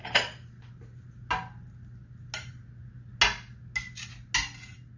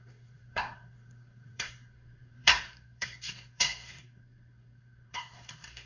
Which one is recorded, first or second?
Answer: first